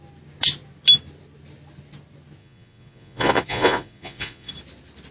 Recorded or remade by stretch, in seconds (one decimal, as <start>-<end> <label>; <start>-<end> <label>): 0.0-2.4 recorded; 2.4-4.5 remade; 4.5-5.1 recorded